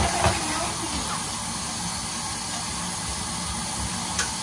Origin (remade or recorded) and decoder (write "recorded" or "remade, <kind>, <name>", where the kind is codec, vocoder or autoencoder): recorded